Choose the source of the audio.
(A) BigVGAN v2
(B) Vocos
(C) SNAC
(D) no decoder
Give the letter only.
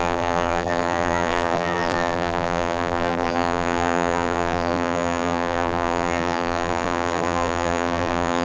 A